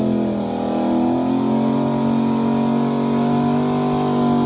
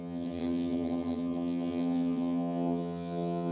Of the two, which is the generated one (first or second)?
second